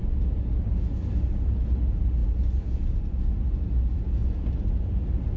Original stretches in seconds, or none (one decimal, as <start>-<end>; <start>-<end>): 0.0-5.4